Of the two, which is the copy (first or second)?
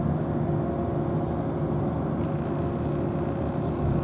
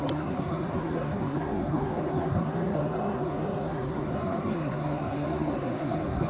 second